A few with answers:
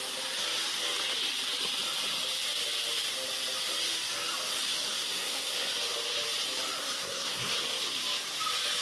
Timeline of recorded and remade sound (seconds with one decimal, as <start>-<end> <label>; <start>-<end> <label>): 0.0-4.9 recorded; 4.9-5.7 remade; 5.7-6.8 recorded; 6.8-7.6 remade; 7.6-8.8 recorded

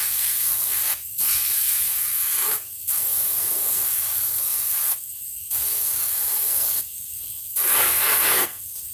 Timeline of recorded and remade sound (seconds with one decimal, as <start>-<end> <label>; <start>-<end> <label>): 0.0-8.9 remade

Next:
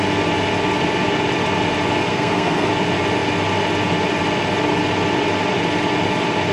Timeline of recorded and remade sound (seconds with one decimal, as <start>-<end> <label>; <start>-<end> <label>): 0.0-2.1 recorded; 2.1-2.7 remade; 2.7-6.5 recorded

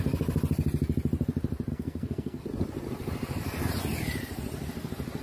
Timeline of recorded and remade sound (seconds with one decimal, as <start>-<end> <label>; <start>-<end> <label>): 0.0-1.7 recorded; 1.7-2.4 remade; 2.4-5.2 recorded